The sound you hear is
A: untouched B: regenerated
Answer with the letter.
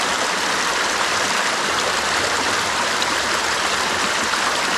B